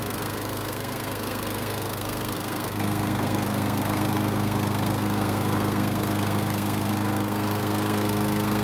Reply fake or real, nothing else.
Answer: fake